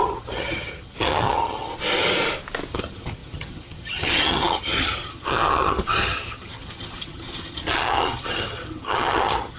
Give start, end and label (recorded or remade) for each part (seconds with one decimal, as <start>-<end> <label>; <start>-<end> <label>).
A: 0.0-1.7 remade; 1.7-2.7 recorded; 2.7-9.6 remade

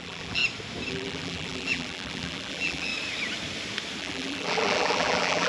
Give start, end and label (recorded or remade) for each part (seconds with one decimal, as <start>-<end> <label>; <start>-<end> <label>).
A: 0.0-0.4 remade; 0.4-0.9 recorded; 0.9-2.9 remade; 2.9-4.0 recorded; 4.0-5.5 remade

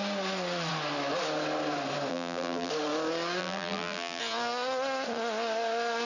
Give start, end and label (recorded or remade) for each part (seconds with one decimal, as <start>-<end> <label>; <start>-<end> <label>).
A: 0.0-2.1 recorded; 2.1-2.7 remade; 2.7-3.4 recorded; 3.4-4.2 remade; 4.2-6.0 recorded

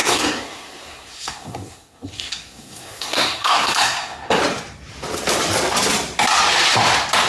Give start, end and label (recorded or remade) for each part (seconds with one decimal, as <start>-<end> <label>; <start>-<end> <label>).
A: 0.0-4.4 remade; 4.4-7.3 recorded